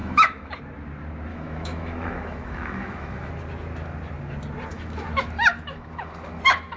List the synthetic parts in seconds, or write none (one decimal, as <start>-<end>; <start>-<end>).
0.0-0.6; 1.3-3.3; 4.7-6.8